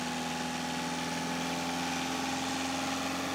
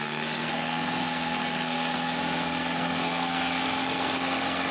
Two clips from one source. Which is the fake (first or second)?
second